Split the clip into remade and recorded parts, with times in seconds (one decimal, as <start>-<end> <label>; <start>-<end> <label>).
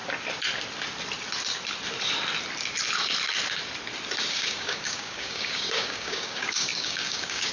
0.0-4.3 recorded; 4.3-7.5 remade